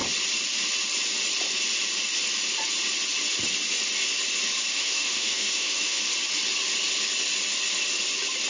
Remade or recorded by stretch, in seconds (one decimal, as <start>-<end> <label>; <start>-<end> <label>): 0.0-4.7 recorded; 4.7-6.0 remade; 6.0-8.5 recorded